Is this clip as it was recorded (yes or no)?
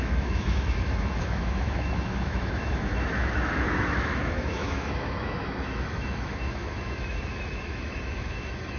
no